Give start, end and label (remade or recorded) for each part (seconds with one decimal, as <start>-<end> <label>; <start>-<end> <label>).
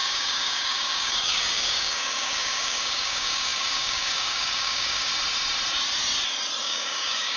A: 0.0-5.1 remade; 5.1-6.6 recorded; 6.6-7.4 remade